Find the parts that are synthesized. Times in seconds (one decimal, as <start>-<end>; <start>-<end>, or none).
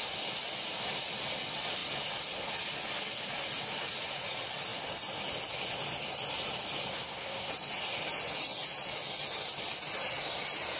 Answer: 6.9-7.5